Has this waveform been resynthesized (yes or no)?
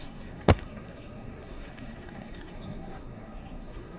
yes